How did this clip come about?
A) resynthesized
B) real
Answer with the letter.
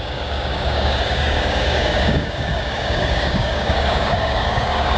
A